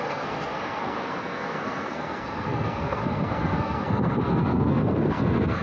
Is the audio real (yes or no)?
no